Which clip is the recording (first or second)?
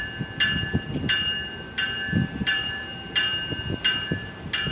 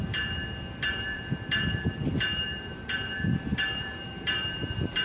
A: first